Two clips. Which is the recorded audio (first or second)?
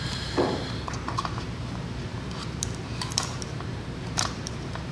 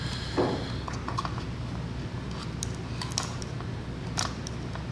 second